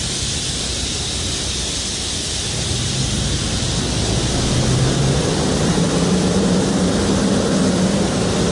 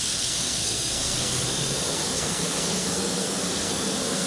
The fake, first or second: second